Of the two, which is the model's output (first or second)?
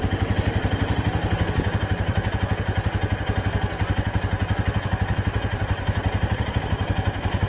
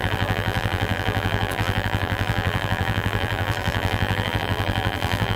second